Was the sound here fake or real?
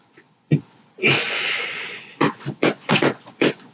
fake